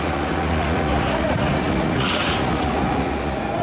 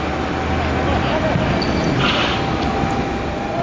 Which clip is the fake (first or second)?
first